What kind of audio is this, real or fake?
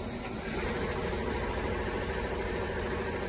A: real